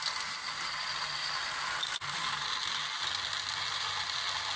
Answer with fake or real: real